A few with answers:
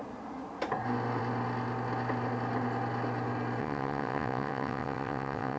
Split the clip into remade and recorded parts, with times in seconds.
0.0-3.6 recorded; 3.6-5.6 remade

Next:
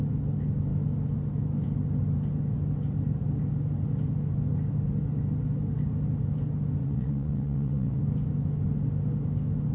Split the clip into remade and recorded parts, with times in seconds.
0.0-6.8 recorded; 6.8-8.0 remade; 8.0-9.7 recorded

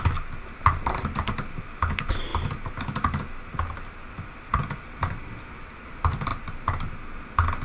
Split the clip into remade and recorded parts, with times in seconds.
0.0-7.6 recorded

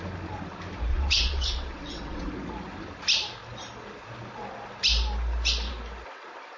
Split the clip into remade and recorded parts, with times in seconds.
0.0-0.9 recorded; 0.9-2.3 remade; 2.3-6.6 recorded

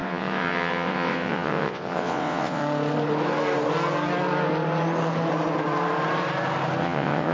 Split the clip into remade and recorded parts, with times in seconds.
0.0-2.6 remade; 2.6-6.8 recorded; 6.8-7.3 remade

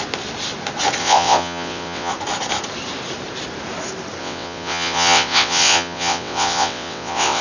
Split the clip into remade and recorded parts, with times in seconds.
0.0-1.0 recorded; 1.0-2.1 remade; 2.1-4.2 recorded; 4.2-7.4 remade

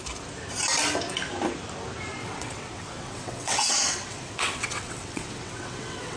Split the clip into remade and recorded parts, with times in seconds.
0.0-2.2 recorded; 2.2-6.2 remade